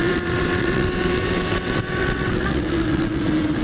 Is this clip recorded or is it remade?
remade